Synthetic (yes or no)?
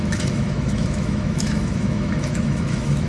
yes